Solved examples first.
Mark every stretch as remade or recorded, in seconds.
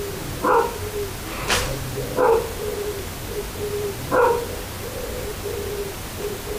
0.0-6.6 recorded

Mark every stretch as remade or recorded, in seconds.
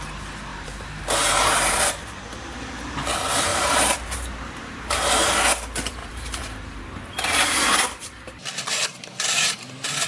0.0-0.5 recorded; 0.5-2.2 remade; 2.2-3.5 recorded; 3.5-5.3 remade; 5.3-6.0 recorded; 6.0-6.8 remade; 6.8-10.1 recorded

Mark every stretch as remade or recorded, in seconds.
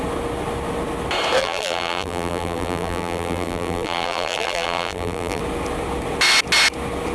0.0-1.4 recorded; 1.4-5.4 remade; 5.4-7.1 recorded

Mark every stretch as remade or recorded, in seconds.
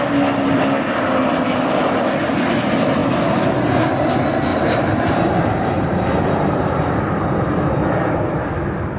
0.0-4.5 recorded; 4.5-7.7 remade; 7.7-9.0 recorded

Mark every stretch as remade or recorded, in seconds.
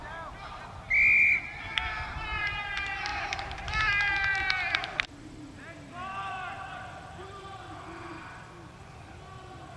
0.0-6.0 recorded; 6.0-7.6 remade; 7.6-9.8 recorded